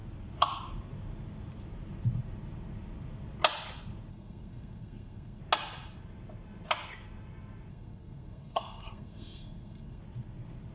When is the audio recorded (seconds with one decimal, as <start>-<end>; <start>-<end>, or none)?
0.0-4.1; 5.4-7.7; 10.0-10.7